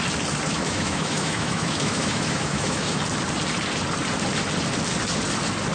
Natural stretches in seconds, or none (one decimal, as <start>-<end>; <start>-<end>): 0.0-0.5; 3.0-5.7